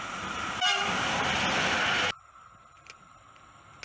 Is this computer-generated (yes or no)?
no